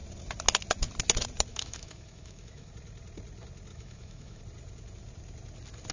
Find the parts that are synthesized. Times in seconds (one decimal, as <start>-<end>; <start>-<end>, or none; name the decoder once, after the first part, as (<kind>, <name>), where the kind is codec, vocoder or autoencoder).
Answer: 1.5-2.7 (autoencoder, DAC-VAE); 3.7-4.4